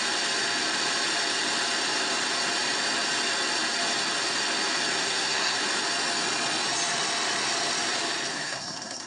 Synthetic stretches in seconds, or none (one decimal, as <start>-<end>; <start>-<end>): 5.0-5.6; 8.3-9.1